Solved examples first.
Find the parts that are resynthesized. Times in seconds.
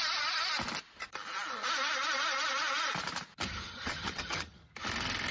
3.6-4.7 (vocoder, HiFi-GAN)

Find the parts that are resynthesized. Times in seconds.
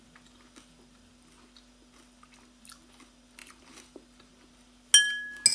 3.4-4.3 (vocoder, BigVGAN v2)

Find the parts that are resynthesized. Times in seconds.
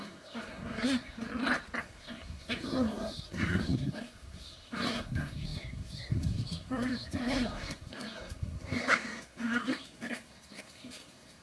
0.0-1.3 (codec, SNAC); 1.8-11.4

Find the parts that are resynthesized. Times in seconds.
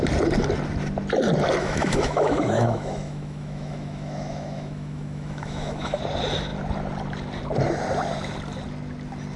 1.6-6.0 (autoencoder, DAC-VAE)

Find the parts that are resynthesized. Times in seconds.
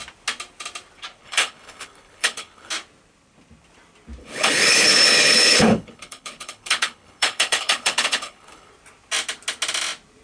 1.2-2.7 (codec, HILCodec); 4.2-8.7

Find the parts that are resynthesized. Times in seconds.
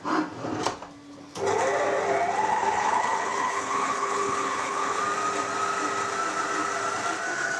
2.5-5.0 (codec, HILCodec)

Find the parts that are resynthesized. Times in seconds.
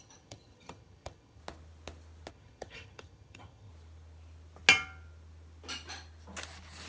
0.0-1.4 (vocoder, HiFi-GAN); 2.3-3.7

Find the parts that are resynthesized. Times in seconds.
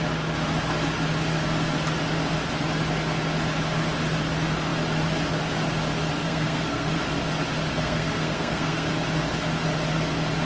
6.2-7.0 (codec, SNAC); 7.7-8.9